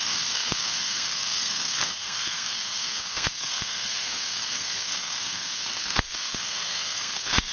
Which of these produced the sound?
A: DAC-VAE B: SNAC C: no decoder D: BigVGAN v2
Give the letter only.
B